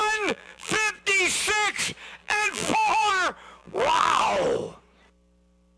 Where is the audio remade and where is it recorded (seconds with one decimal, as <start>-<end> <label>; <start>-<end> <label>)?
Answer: 0.0-0.9 remade; 0.9-2.2 recorded; 2.2-3.1 remade; 3.1-3.6 recorded; 3.6-4.2 remade; 4.2-5.8 recorded